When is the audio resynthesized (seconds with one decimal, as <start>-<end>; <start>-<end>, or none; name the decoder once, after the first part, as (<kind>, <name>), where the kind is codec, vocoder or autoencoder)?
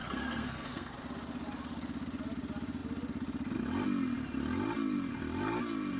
0.0-0.9 (codec, SNAC)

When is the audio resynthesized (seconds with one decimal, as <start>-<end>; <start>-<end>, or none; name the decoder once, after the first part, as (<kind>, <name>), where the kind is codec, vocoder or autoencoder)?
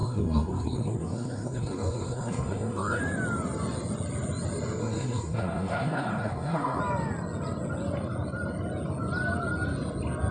0.0-3.0 (codec, SNAC); 4.8-6.8